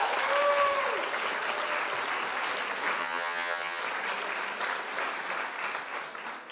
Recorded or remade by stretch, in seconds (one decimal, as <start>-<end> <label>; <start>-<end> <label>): 0.0-3.0 recorded; 3.0-3.8 remade; 3.8-6.5 recorded